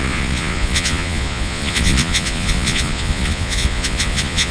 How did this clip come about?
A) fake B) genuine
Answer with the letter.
A